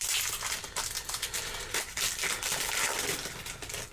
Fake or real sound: fake